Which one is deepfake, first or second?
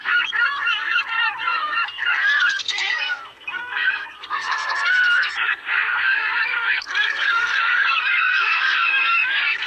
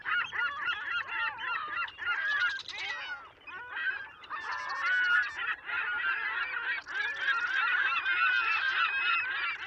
first